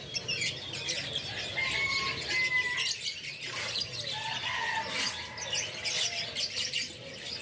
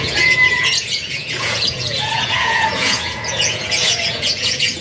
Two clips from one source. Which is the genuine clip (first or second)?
first